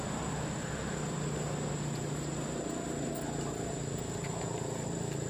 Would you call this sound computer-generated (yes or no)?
no